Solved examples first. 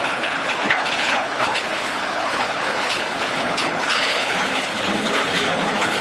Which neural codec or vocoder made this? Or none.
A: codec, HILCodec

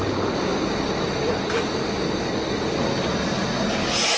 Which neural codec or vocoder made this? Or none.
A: none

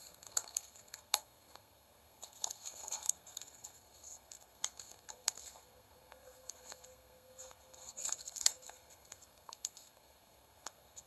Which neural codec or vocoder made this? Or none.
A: codec, SNAC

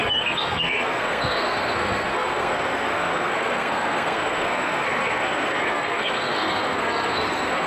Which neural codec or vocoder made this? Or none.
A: codec, SNAC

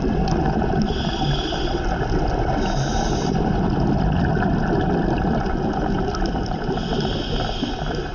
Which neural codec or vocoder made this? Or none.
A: none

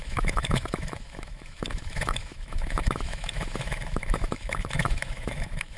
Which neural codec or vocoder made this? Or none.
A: autoencoder, DAC-VAE